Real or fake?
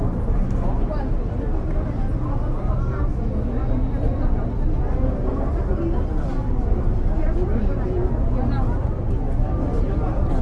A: real